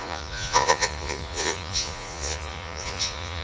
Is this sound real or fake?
fake